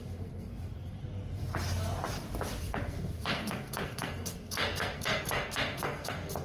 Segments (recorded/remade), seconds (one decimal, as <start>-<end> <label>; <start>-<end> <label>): 0.0-1.5 remade; 1.5-2.6 recorded; 2.6-6.4 remade

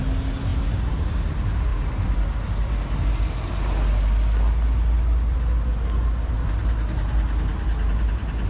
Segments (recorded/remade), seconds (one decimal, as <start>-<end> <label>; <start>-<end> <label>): 0.0-8.5 recorded

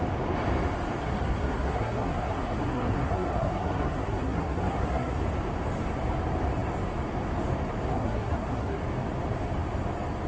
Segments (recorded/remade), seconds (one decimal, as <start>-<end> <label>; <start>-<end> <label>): 0.0-1.0 recorded; 1.0-5.2 remade; 5.2-7.9 recorded; 7.9-8.8 remade; 8.8-10.3 recorded